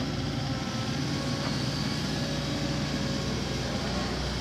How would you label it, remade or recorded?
recorded